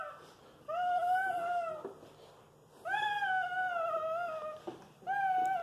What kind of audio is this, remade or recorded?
recorded